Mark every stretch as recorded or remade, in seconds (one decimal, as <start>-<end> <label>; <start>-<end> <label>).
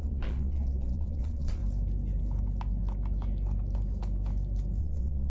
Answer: 0.0-1.6 remade; 1.6-4.8 recorded; 4.8-5.3 remade